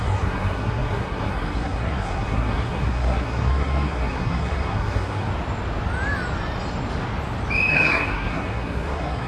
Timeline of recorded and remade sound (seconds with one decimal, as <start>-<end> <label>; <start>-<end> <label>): 0.0-5.3 remade; 5.3-7.7 recorded; 7.7-9.3 remade